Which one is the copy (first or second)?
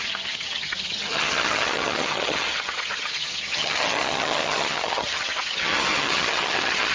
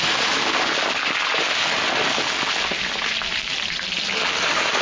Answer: first